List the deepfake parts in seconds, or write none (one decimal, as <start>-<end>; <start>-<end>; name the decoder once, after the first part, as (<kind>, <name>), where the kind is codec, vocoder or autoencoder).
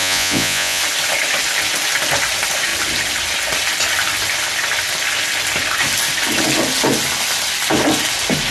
0.0-0.8 (vocoder, Vocos)